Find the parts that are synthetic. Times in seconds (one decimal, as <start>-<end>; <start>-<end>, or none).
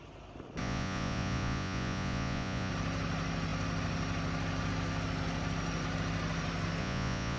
0.6-2.7; 6.8-7.4